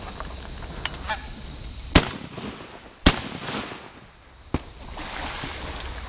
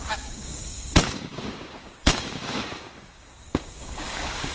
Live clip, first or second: first